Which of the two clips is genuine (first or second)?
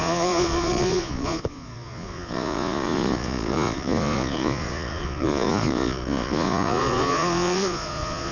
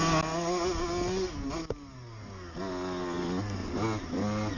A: second